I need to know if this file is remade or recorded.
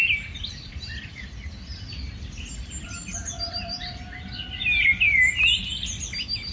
recorded